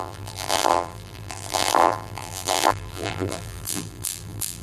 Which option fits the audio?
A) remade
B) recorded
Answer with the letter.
A